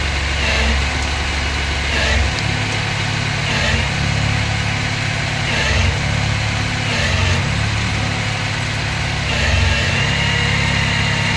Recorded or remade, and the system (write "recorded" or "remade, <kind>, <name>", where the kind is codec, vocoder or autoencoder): recorded